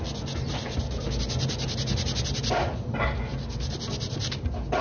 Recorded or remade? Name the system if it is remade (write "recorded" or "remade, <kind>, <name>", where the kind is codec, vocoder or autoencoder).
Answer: recorded